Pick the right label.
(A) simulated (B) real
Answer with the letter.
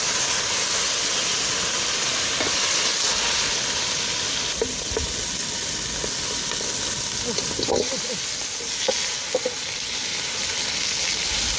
B